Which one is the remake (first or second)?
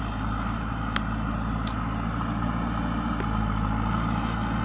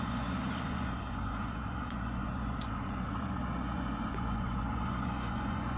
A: second